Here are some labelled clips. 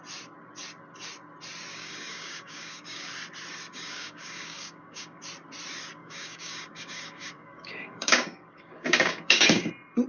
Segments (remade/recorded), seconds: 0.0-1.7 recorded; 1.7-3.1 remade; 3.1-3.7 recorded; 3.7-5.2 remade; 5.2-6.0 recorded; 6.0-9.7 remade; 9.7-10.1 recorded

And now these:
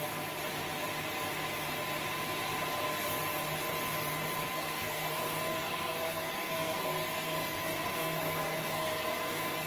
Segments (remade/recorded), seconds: 0.0-4.4 recorded; 4.4-9.7 remade

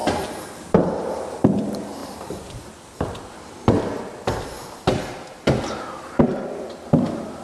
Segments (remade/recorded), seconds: 0.0-2.0 recorded; 2.0-6.4 remade; 6.4-7.4 recorded